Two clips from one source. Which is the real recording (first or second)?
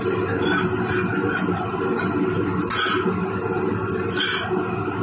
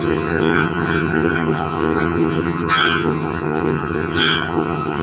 first